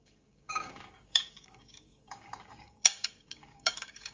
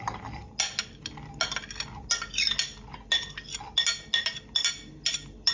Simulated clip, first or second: first